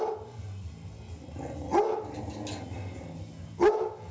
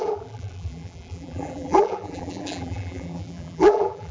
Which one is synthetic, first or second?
second